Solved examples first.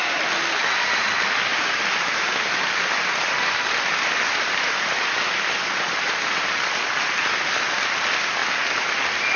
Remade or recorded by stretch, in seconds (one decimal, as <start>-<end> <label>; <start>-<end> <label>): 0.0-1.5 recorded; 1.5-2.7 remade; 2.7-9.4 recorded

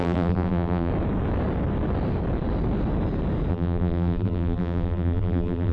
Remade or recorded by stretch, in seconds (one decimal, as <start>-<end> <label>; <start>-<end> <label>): 0.0-0.9 remade; 0.9-3.5 recorded; 3.5-5.7 remade

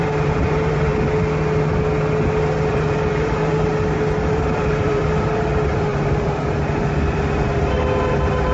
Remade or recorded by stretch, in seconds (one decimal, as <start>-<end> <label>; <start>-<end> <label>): 0.0-0.9 remade; 0.9-2.7 recorded; 2.7-3.7 remade; 3.7-4.3 recorded; 4.3-8.5 remade

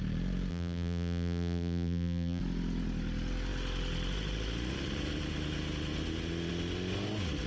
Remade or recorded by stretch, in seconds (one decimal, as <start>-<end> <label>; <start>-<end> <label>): 0.0-0.5 recorded; 0.5-2.4 remade; 2.4-7.5 recorded

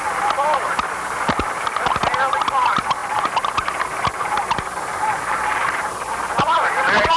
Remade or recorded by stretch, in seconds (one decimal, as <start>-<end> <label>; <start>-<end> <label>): 0.0-7.2 recorded

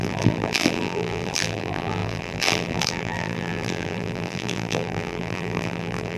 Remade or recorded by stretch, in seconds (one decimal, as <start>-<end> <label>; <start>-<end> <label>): 0.0-6.2 remade

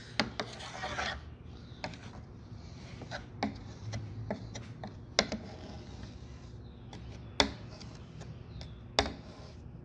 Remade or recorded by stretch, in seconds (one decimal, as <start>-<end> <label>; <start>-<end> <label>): 0.0-2.0 recorded; 2.0-3.3 remade; 3.3-3.7 recorded; 3.7-4.4 remade; 4.4-9.8 recorded